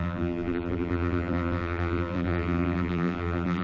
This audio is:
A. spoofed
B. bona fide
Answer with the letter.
A